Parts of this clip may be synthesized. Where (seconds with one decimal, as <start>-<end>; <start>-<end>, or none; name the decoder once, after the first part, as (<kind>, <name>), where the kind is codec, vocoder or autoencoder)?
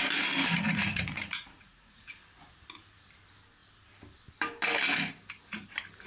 0.4-2.1 (vocoder, Vocos)